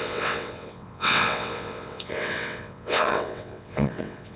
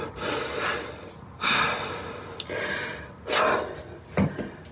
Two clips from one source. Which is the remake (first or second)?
first